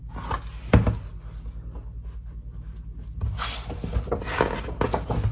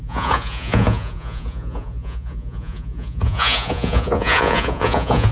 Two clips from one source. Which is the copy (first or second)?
second